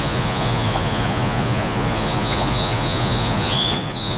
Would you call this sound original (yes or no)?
no